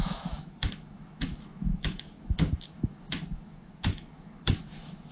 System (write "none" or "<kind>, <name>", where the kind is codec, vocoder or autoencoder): autoencoder, DAC-VAE